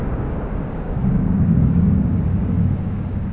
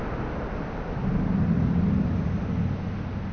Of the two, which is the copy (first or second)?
first